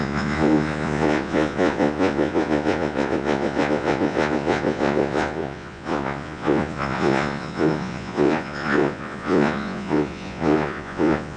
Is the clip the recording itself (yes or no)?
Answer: no